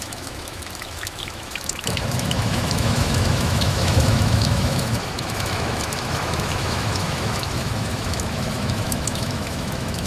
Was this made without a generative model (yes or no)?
no